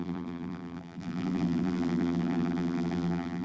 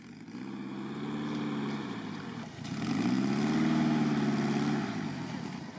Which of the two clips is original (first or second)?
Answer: second